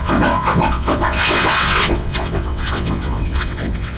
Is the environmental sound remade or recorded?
remade